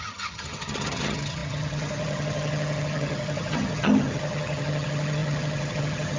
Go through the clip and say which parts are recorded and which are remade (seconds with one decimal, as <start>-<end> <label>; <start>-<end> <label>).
0.0-6.2 remade